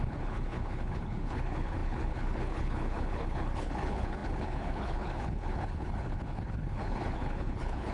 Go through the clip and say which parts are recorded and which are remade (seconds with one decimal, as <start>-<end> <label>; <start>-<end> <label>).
0.0-7.9 remade